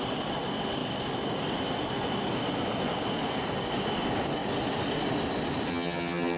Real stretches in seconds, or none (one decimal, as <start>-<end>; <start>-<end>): 0.0-5.7